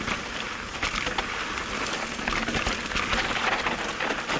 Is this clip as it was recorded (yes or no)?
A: yes